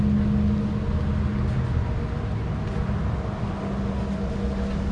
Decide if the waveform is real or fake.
real